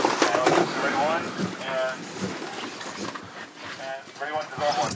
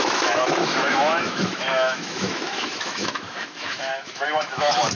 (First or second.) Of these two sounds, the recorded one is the first